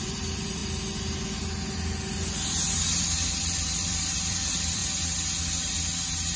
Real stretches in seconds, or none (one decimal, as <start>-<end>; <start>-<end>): 0.6-3.0; 4.8-6.4